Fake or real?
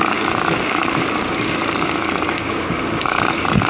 fake